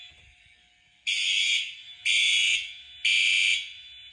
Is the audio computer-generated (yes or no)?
no